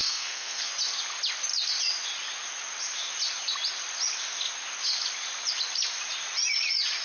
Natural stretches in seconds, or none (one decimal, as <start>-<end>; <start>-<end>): 0.7-7.0